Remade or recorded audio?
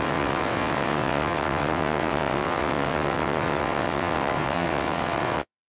remade